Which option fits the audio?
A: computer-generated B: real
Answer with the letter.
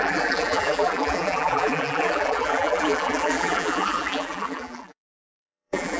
A